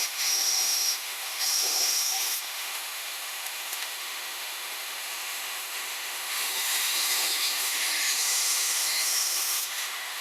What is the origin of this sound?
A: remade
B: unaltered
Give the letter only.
A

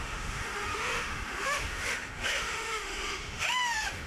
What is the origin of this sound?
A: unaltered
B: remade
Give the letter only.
B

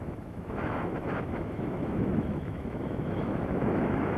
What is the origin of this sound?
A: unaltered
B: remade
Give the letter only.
B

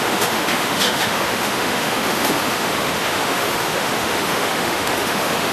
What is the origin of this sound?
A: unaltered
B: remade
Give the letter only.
B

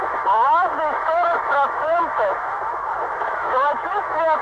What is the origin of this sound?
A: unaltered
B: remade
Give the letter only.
B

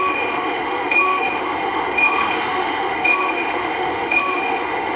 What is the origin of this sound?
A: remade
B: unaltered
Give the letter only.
A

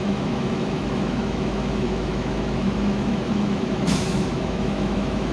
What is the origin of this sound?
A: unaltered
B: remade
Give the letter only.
B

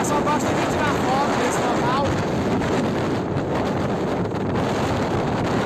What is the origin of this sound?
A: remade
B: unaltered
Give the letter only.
B